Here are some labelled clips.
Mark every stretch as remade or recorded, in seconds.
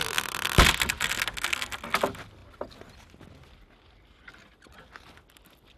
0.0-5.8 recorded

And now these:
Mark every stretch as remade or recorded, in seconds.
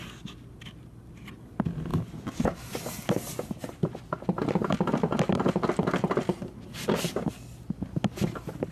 0.0-8.7 recorded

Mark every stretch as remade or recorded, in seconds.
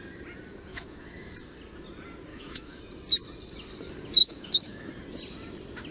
0.0-0.7 recorded; 0.7-1.3 remade; 1.3-2.3 recorded; 2.3-2.8 remade; 2.8-4.2 recorded; 4.2-4.9 remade; 4.9-5.9 recorded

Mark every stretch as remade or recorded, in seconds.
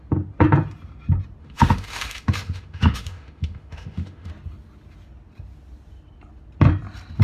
0.0-1.4 recorded; 1.4-4.3 remade; 4.3-7.2 recorded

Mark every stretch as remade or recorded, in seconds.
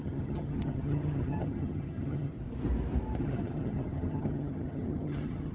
0.0-2.3 remade; 2.3-3.2 recorded; 3.2-5.5 remade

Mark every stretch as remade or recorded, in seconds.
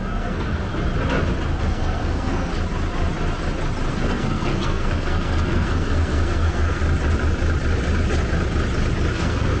0.0-0.7 remade; 0.7-1.6 recorded; 1.6-2.5 remade; 2.5-3.9 recorded; 3.9-6.8 remade; 6.8-9.1 recorded; 9.1-9.6 remade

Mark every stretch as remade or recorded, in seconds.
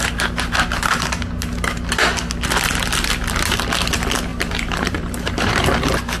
0.0-4.3 recorded; 4.3-5.6 remade; 5.6-6.2 recorded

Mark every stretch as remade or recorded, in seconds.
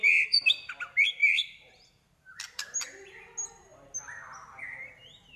0.0-0.7 remade; 0.7-1.2 recorded; 1.2-3.1 remade; 3.1-5.4 recorded